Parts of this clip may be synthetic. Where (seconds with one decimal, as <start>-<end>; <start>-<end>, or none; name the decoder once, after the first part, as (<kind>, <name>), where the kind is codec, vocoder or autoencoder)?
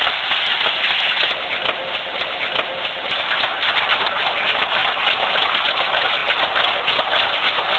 3.5-4.1 (vocoder, BigVGAN v2)